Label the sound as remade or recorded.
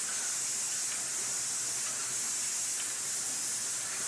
recorded